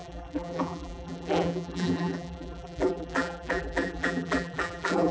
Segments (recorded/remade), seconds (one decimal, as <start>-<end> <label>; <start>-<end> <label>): 0.0-5.1 remade

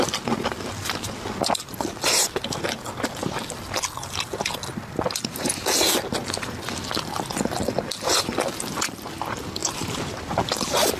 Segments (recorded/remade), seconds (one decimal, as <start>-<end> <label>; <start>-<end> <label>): 0.0-9.6 recorded; 9.6-10.2 remade; 10.2-11.0 recorded